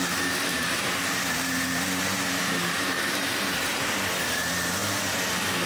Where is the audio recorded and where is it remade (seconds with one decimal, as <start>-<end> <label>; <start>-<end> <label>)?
0.0-0.5 recorded; 0.5-3.8 remade; 3.8-5.7 recorded